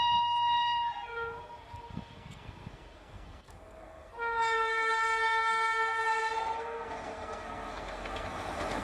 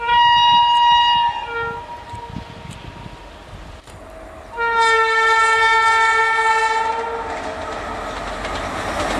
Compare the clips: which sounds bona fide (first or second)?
second